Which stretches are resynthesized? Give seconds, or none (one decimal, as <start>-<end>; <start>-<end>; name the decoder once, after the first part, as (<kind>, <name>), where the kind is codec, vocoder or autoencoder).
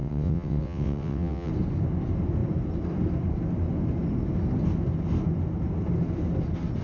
0.0-1.5 (vocoder, WaveNeXt)